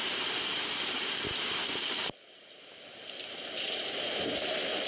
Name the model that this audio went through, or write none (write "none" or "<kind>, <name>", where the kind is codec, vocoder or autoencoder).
none